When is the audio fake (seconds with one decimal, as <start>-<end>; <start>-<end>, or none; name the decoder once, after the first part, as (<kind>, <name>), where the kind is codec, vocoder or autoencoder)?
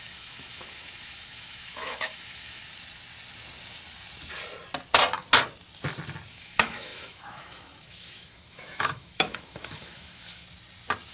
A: 0.0-2.6 (autoencoder, DAC-VAE); 6.3-10.4